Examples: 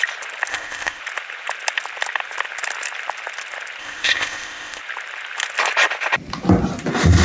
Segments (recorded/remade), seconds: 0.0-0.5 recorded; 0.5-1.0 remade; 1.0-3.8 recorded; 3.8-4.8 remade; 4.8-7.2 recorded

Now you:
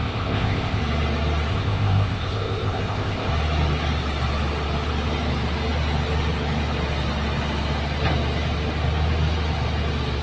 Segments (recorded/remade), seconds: 0.0-0.8 remade; 0.8-1.5 recorded; 1.5-3.3 remade; 3.3-10.2 recorded